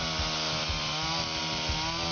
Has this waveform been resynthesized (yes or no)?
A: no